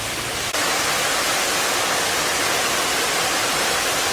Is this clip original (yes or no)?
yes